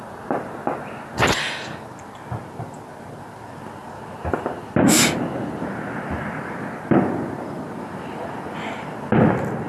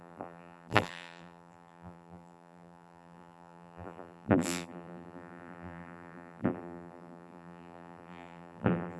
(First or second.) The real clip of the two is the first